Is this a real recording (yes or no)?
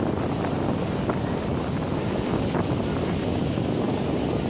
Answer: yes